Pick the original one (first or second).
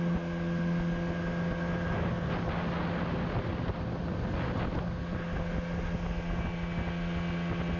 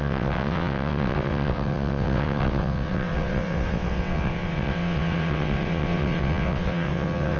first